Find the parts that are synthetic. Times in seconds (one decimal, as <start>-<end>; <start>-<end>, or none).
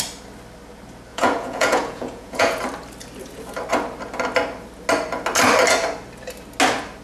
1.1-2.6